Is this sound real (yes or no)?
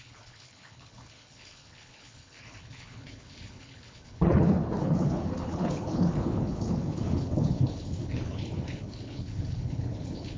no